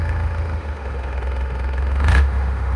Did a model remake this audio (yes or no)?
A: yes